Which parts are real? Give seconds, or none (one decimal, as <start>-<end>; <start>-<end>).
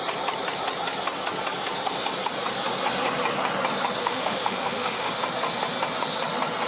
0.0-4.0; 5.1-6.7